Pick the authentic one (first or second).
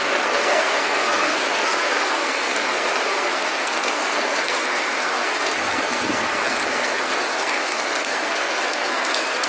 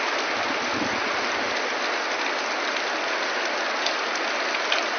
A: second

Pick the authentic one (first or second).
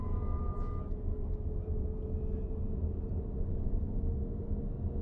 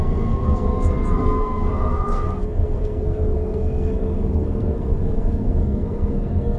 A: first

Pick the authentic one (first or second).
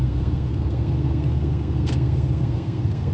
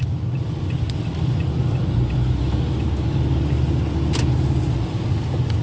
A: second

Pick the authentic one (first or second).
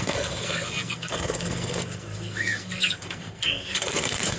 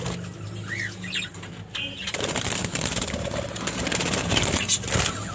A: second